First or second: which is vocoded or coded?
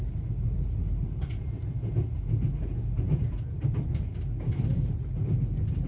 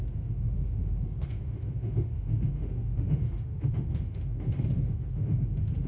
second